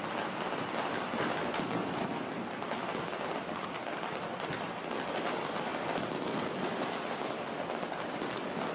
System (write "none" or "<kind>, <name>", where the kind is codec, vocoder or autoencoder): none